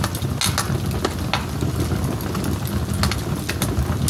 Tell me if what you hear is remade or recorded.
recorded